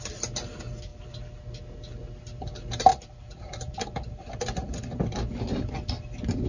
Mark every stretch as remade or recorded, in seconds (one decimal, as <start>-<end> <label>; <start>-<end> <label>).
0.0-0.9 recorded; 0.9-1.4 remade; 1.4-2.9 recorded; 2.9-5.6 remade; 5.6-6.5 recorded